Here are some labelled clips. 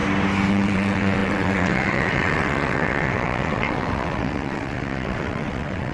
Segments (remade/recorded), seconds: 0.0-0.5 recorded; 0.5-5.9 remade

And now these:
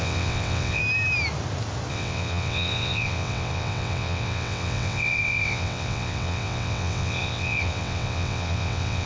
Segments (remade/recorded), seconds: 0.0-0.8 remade; 0.8-1.9 recorded; 1.9-9.1 remade

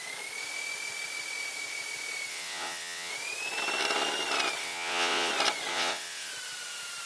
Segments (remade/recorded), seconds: 0.0-2.3 recorded; 2.3-3.1 remade; 3.1-4.6 recorded; 4.6-5.3 remade; 5.3-5.7 recorded; 5.7-6.3 remade; 6.3-7.1 recorded

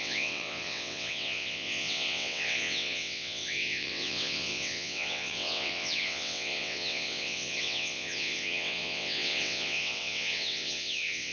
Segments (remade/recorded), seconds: 0.0-11.3 remade

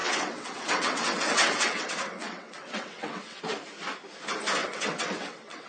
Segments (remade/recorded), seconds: 0.0-3.4 remade; 3.4-4.6 recorded; 4.6-5.7 remade

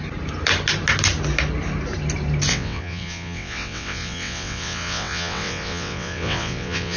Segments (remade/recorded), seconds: 0.0-2.5 recorded; 2.5-7.0 remade